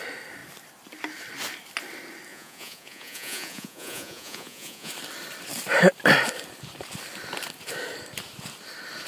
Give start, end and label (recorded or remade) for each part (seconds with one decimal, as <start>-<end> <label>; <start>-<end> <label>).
0.0-2.3 recorded; 2.3-4.9 remade; 4.9-9.1 recorded